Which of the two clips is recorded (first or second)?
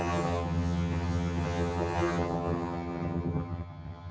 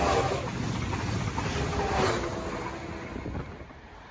second